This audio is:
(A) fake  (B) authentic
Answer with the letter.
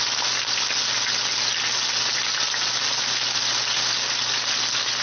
B